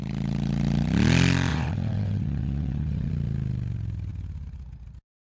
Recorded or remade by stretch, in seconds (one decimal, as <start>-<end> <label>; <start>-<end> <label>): 0.0-1.5 recorded; 1.5-3.1 remade; 3.1-5.2 recorded